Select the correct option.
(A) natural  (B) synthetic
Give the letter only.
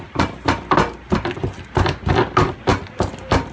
A